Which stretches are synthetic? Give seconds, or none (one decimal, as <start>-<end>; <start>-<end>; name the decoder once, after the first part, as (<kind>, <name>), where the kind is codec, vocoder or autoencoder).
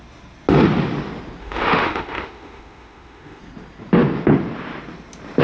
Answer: 1.4-3.4 (autoencoder, DAC-VAE)